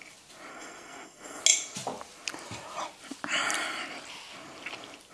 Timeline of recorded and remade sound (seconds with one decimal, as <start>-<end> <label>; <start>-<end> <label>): 0.0-0.5 recorded; 0.5-1.4 remade; 1.4-5.1 recorded